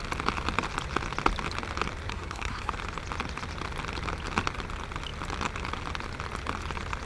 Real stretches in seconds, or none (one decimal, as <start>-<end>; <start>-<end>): 0.0-2.1; 2.7-7.1